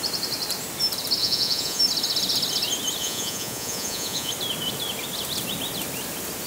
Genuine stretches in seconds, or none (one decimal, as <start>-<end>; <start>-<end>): 0.0-1.2; 1.8-3.0; 4.3-6.5